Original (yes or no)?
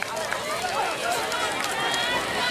yes